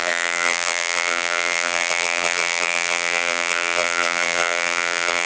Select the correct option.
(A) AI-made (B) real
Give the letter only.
A